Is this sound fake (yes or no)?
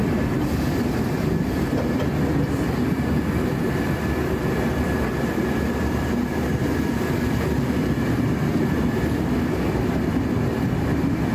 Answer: no